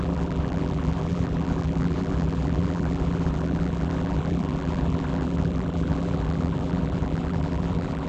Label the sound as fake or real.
fake